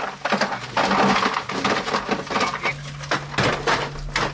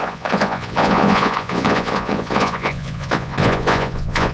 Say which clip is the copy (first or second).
second